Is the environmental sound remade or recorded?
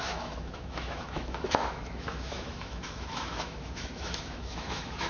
remade